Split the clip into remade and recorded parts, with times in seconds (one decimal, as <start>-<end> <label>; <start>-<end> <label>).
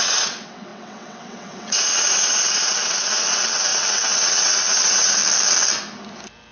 0.0-5.2 remade; 5.2-6.5 recorded